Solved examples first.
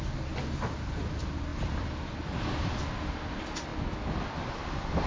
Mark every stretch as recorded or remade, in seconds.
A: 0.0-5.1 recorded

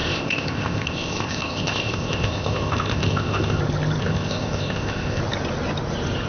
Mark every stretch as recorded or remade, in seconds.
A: 0.0-3.6 remade; 3.6-4.0 recorded; 4.0-5.2 remade; 5.2-6.3 recorded

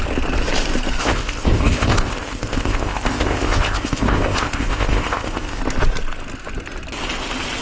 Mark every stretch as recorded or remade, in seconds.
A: 0.0-1.0 recorded; 1.0-5.6 remade; 5.6-7.6 recorded

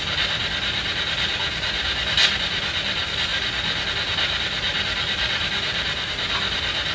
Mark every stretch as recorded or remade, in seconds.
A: 0.0-6.9 recorded

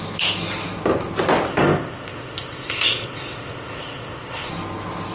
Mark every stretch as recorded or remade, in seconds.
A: 0.0-1.5 recorded; 1.5-4.5 remade; 4.5-5.1 recorded

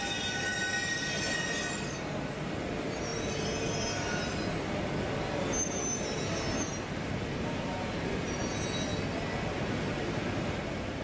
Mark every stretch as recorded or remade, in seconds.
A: 0.0-11.0 recorded